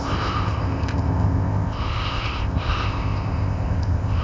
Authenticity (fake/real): fake